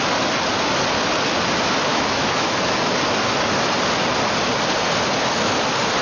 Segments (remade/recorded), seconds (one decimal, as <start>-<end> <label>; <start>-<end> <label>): 0.0-1.9 recorded; 1.9-2.9 remade; 2.9-6.0 recorded